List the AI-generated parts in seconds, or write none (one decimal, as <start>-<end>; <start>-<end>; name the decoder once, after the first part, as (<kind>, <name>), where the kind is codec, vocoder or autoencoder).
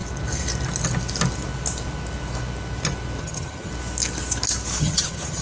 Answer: 3.2-3.7 (vocoder, HiFi-GAN); 4.8-5.4